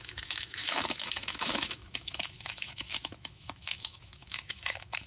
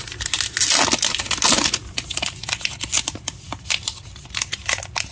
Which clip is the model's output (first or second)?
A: first